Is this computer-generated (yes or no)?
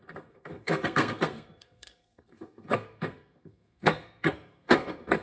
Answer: yes